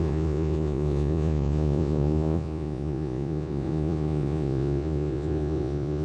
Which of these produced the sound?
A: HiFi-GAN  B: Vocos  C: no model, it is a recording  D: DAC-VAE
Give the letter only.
B